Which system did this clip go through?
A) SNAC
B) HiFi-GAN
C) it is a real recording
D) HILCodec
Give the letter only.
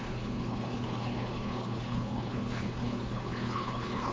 D